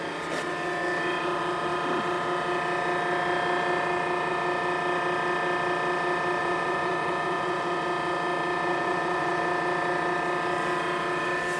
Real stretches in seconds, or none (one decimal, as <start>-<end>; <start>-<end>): 0.0-6.4; 7.8-8.7; 9.4-11.6